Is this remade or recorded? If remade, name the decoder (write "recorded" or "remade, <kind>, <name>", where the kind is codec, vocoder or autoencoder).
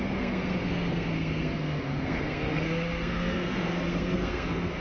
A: remade, codec, SNAC